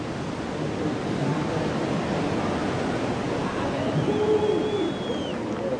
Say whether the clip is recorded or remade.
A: recorded